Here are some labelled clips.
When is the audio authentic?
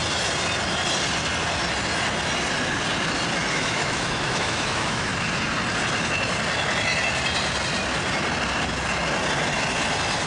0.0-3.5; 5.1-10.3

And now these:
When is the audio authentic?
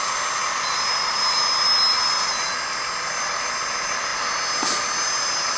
0.0-5.6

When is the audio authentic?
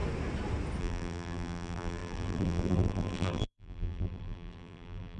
0.0-0.8